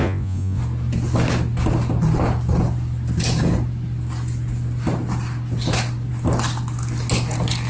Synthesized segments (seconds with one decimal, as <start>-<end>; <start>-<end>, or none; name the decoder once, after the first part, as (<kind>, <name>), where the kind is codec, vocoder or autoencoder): 0.0-0.6 (vocoder, Vocos)